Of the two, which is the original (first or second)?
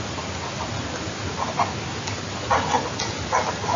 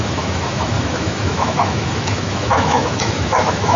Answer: first